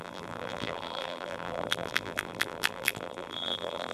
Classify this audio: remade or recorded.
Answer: remade